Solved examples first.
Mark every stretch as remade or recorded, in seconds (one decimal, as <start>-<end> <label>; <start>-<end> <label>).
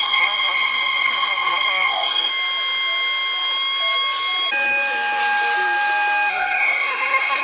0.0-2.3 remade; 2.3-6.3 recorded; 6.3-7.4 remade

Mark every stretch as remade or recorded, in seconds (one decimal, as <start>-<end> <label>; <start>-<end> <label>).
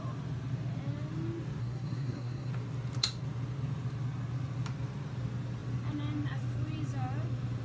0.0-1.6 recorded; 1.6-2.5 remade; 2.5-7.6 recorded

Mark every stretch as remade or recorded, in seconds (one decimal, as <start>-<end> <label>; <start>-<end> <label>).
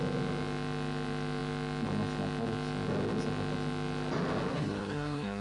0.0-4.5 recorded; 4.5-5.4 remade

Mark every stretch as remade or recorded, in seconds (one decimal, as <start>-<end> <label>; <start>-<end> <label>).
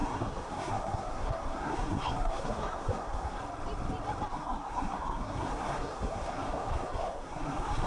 0.0-3.4 remade; 3.4-4.3 recorded; 4.3-7.9 remade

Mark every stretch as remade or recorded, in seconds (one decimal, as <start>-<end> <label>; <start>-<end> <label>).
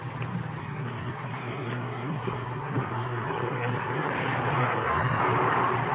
0.0-0.6 recorded; 0.6-4.1 remade; 4.1-4.6 recorded; 4.6-5.2 remade; 5.2-5.9 recorded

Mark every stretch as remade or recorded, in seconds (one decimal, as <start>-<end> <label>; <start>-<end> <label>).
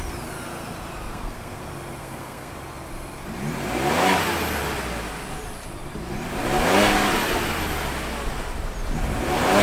0.0-1.1 recorded; 1.1-1.6 remade; 1.6-2.0 recorded; 2.0-2.5 remade; 2.5-9.6 recorded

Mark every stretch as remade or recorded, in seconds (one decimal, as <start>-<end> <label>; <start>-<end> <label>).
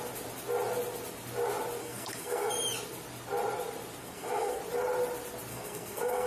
0.0-1.8 recorded; 1.8-2.5 remade; 2.5-4.0 recorded; 4.0-4.6 remade; 4.6-5.5 recorded; 5.5-6.3 remade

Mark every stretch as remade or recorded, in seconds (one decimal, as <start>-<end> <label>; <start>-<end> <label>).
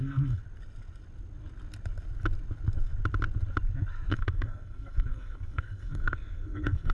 0.0-0.4 remade; 0.4-4.1 recorded; 4.1-6.9 remade